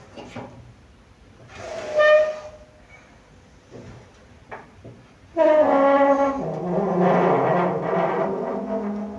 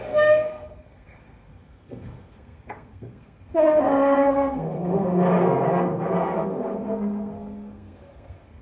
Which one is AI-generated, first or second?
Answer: second